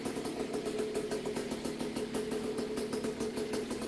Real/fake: real